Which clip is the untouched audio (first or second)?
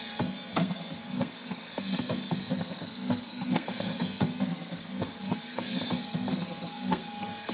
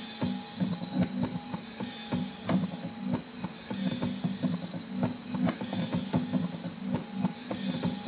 second